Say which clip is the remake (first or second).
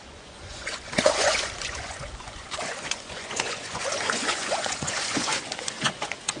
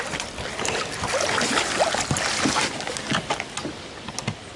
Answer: first